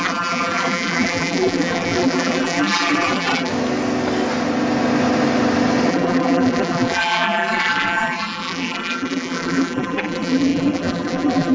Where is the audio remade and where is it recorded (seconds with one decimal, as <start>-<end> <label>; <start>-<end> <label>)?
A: 0.0-3.5 remade; 3.5-5.9 recorded; 5.9-11.5 remade